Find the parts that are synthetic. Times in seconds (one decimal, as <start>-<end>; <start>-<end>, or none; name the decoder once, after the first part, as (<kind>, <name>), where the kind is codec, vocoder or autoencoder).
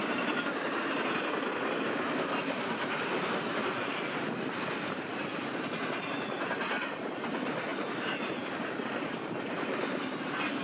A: none